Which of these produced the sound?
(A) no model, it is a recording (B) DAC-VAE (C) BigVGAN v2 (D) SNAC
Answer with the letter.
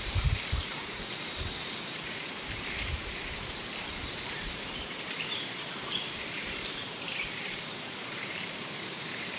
C